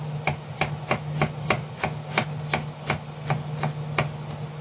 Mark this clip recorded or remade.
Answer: recorded